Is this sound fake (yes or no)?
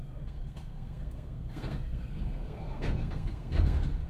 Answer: yes